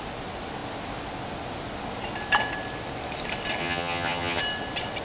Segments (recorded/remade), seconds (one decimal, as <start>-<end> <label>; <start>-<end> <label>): 0.0-3.6 recorded; 3.6-4.4 remade; 4.4-5.0 recorded